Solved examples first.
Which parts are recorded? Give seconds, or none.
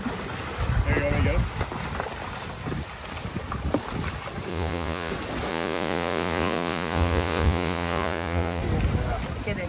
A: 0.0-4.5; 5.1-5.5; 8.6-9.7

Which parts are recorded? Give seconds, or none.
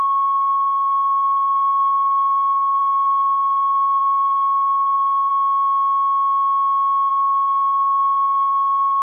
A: 5.3-7.1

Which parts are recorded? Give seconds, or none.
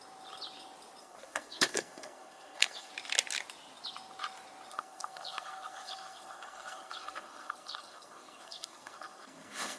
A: 0.0-1.0; 2.9-4.7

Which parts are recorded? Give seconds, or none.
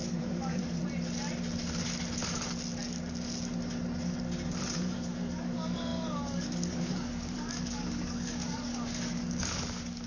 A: 0.6-4.7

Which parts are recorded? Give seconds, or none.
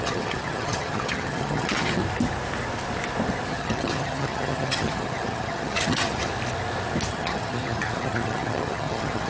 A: 2.0-3.5; 6.3-7.1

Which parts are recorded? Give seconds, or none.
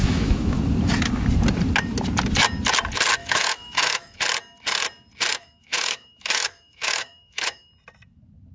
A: 0.6-3.2; 4.2-5.3; 7.7-8.5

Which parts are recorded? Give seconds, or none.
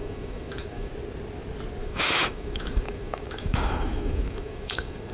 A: 0.9-1.8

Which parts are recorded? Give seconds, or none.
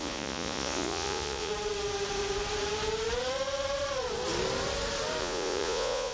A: 1.5-5.2